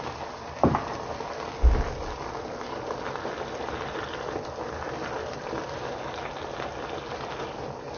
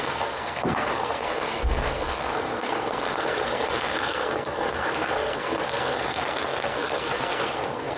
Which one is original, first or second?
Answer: first